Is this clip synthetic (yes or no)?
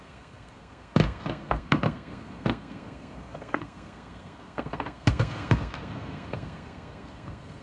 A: yes